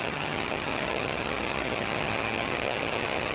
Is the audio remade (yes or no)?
yes